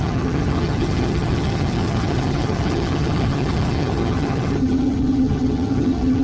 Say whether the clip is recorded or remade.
remade